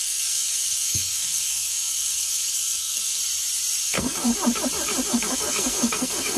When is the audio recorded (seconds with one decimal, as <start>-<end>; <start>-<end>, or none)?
3.2-3.8; 4.3-5.1